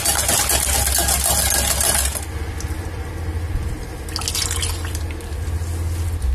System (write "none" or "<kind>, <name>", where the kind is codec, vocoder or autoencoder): none